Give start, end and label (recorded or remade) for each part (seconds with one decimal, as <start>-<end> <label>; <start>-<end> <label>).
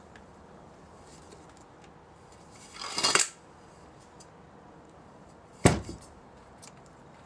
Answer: 0.0-1.1 remade; 1.1-5.1 recorded; 5.1-7.3 remade